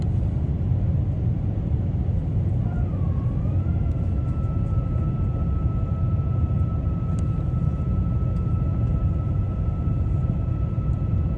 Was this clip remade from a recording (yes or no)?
no